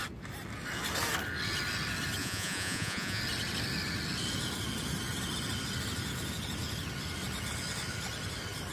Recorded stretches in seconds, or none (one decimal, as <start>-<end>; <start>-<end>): 0.0-2.2; 3.2-8.7